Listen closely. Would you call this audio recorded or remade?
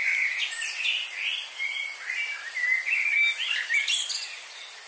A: recorded